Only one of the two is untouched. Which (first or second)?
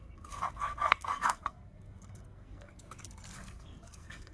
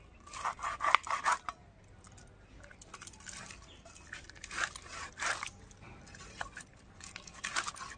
second